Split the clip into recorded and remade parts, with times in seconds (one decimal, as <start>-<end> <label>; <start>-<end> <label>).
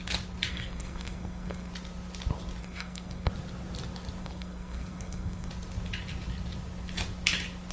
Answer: 0.0-0.5 recorded; 0.5-1.7 remade; 1.7-2.6 recorded; 2.6-3.3 remade; 3.3-4.2 recorded; 4.2-5.5 remade; 5.5-7.7 recorded